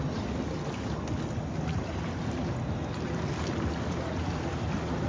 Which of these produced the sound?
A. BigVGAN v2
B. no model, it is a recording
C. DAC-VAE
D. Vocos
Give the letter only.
B